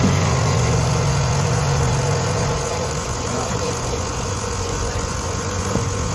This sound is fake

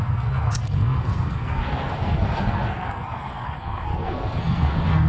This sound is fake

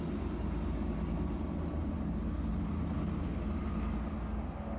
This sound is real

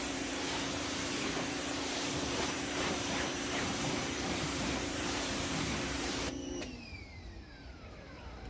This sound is fake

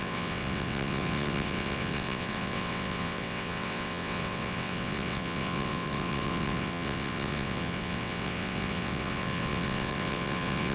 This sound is fake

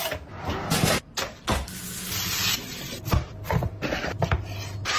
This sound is real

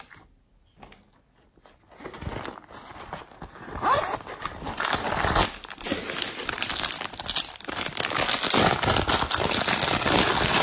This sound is real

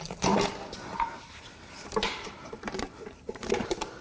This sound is fake